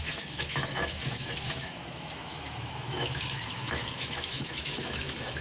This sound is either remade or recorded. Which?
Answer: remade